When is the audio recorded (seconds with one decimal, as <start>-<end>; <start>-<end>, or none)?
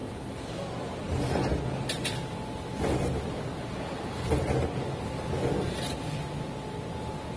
0.0-7.4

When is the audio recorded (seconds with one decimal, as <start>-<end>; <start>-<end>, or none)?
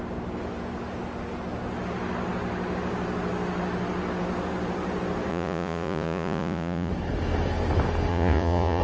0.0-5.3; 6.9-8.1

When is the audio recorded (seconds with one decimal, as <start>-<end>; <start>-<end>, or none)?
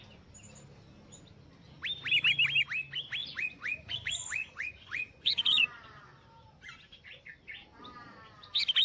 0.0-3.2; 5.8-8.8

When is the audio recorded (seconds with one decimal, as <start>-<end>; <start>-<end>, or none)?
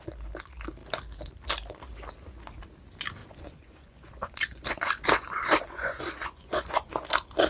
0.0-3.2; 6.9-7.5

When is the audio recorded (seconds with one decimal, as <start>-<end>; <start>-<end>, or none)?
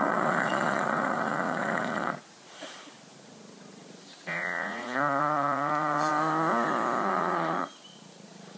6.1-7.1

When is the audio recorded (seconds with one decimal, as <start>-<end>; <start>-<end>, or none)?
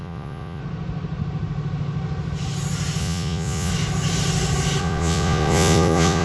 0.6-3.0; 3.7-4.8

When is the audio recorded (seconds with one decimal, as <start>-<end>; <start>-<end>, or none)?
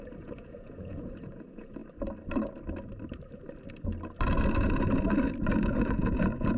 1.8-5.8